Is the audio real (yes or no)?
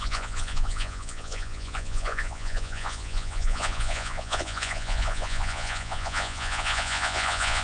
no